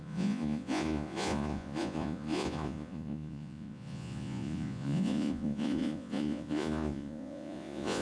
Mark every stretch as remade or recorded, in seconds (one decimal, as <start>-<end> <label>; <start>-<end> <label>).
0.0-8.0 remade